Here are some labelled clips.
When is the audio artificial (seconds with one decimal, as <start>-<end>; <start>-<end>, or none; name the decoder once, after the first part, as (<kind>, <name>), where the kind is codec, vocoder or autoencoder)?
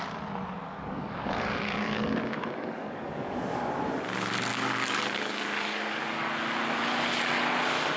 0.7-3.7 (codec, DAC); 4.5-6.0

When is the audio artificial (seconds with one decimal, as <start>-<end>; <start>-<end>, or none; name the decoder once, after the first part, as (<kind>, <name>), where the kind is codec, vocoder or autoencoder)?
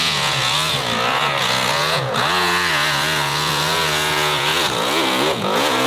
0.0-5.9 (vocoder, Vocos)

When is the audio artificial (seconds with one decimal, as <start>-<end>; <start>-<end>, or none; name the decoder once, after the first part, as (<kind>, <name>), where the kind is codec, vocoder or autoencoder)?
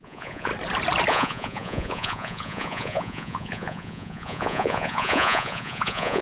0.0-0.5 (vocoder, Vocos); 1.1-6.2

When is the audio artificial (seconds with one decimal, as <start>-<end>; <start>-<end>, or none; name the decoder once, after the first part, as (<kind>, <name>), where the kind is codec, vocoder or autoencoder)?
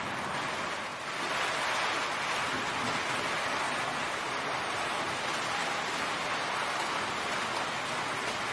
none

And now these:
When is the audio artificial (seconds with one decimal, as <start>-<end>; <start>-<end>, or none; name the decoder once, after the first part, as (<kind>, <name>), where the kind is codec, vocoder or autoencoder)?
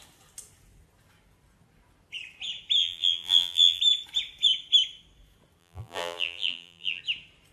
2.8-3.8 (vocoder, BigVGAN v2); 5.6-7.0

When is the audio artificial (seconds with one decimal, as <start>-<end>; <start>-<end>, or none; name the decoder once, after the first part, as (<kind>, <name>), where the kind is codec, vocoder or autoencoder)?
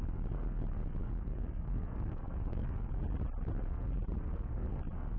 1.0-3.0 (codec, DAC)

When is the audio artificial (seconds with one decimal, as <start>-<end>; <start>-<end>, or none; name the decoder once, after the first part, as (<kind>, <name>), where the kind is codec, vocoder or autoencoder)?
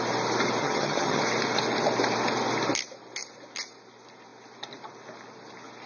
0.6-1.2 (vocoder, HiFi-GAN)